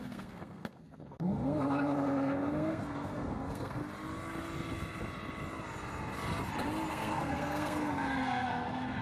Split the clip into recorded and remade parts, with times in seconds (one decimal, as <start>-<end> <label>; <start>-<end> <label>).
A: 0.0-3.8 remade; 3.8-6.9 recorded; 6.9-9.0 remade